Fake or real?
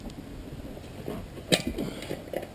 real